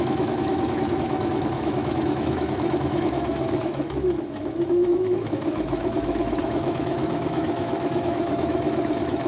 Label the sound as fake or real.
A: fake